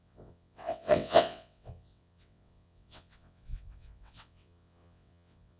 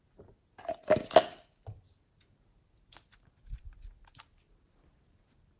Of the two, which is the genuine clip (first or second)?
second